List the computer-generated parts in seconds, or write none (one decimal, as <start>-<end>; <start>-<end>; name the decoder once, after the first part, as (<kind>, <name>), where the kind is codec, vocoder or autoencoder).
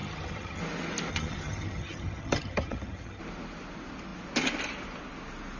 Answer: 0.0-0.6 (vocoder, HiFi-GAN); 1.1-3.2